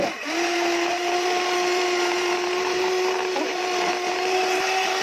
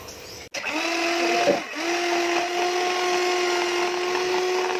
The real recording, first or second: second